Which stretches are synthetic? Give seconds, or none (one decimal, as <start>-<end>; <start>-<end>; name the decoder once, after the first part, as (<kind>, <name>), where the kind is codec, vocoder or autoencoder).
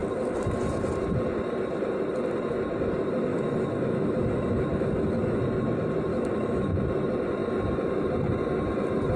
3.3-5.4 (autoencoder, DAC-VAE); 6.1-6.7